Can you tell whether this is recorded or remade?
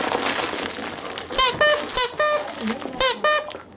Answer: recorded